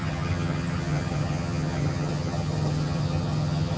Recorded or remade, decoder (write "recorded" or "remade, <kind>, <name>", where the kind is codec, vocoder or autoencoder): remade, vocoder, HiFi-GAN